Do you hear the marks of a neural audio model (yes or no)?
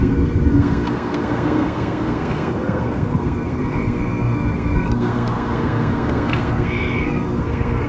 yes